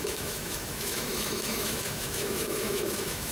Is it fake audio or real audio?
fake